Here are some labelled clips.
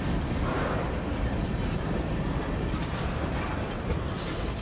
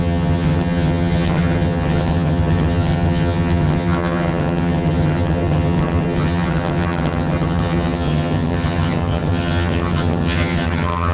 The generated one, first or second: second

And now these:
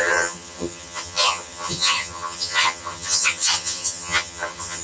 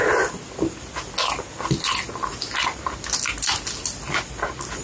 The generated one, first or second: first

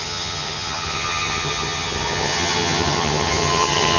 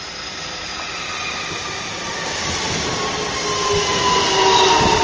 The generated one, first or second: first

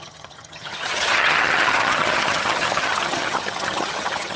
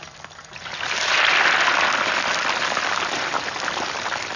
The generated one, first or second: first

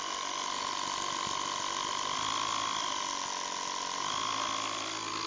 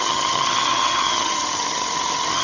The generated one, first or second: second